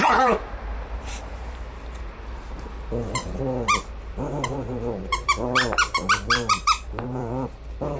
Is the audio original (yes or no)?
no